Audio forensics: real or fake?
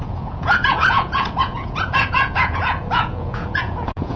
fake